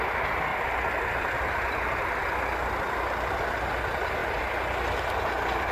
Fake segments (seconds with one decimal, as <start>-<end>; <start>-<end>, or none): none